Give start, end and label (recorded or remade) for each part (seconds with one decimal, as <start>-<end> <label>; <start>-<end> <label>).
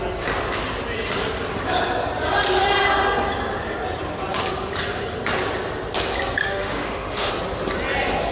0.0-6.4 recorded; 6.4-7.3 remade; 7.3-8.3 recorded